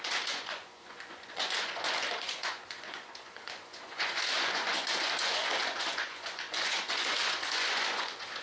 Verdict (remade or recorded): remade